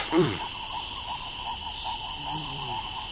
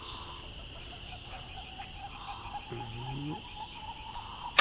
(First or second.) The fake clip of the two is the first